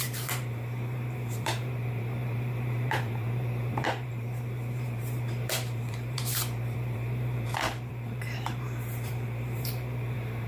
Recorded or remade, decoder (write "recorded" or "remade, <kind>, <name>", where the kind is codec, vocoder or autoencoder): remade, vocoder, BigVGAN v2